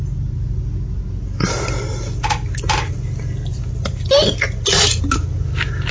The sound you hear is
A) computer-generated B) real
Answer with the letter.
B